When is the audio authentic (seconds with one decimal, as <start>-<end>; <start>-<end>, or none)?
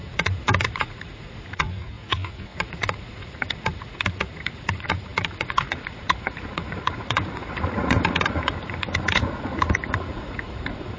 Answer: none